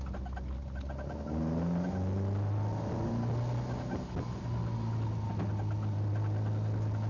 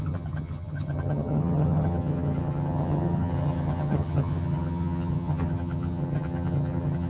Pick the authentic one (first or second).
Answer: first